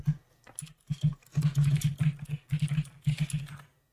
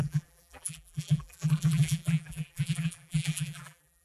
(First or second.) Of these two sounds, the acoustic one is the first